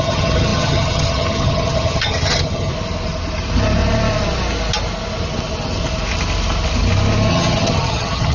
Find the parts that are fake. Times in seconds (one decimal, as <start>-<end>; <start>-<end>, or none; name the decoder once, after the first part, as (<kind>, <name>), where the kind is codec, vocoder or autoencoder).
0.0-2.7 (vocoder, HiFi-GAN); 7.3-8.3